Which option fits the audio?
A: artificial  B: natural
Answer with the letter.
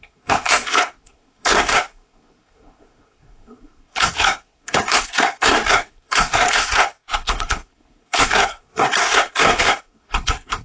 A